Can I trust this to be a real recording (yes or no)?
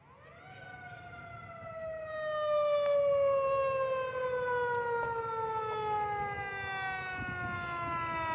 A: yes